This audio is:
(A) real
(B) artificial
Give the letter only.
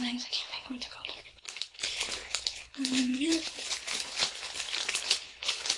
B